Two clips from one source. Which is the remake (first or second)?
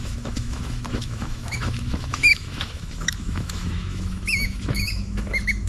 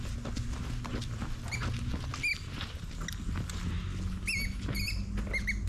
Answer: first